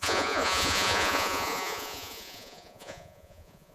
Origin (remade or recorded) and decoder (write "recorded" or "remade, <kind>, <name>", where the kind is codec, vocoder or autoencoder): remade, vocoder, Vocos